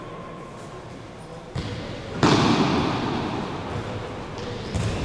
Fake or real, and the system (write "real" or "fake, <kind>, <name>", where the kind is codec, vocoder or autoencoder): real